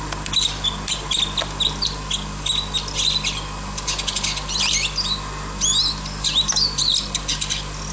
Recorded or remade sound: recorded